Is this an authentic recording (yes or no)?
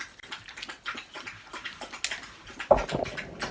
yes